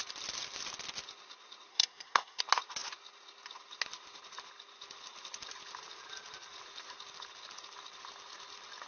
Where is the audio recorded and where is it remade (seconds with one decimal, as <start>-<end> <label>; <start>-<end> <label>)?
0.0-1.7 recorded; 1.7-2.4 remade; 2.4-8.9 recorded